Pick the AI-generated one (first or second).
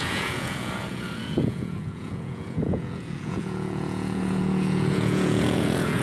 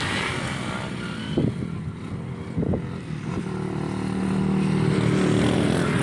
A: first